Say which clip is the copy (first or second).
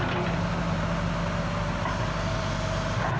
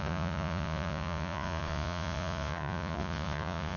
second